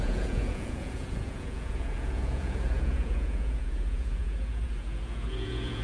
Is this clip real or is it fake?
fake